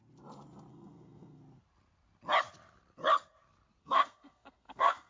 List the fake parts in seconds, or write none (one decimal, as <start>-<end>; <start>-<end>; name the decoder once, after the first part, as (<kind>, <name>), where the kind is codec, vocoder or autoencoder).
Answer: 0.7-1.4 (codec, SNAC); 3.8-5.1